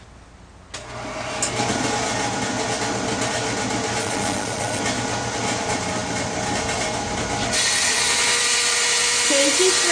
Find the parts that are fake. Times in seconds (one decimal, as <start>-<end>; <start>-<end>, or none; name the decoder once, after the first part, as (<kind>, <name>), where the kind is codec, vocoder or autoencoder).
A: 4.0-4.8 (vocoder, Vocos)